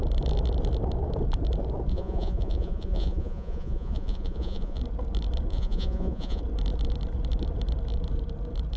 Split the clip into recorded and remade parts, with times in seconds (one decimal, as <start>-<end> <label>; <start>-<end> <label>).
0.0-1.9 recorded; 1.9-4.8 remade; 4.8-5.5 recorded; 5.5-6.4 remade; 6.4-8.8 recorded